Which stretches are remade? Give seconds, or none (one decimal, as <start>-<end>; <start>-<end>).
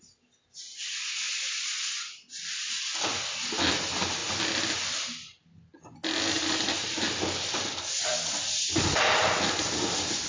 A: none